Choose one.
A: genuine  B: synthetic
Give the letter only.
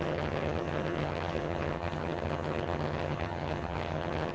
B